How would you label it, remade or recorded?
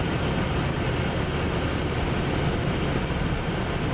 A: recorded